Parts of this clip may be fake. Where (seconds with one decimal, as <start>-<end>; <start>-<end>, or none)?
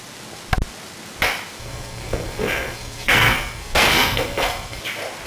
1.6-4.8